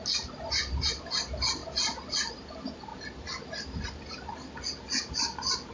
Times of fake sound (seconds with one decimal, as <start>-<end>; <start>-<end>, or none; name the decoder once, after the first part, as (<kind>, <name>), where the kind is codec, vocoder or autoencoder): none